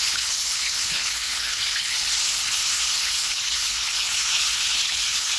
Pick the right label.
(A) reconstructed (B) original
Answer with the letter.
A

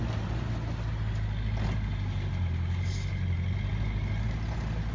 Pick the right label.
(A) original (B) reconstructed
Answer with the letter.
A